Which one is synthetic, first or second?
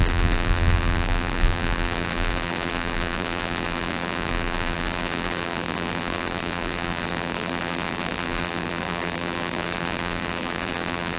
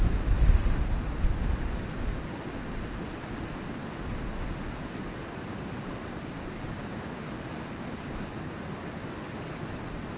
first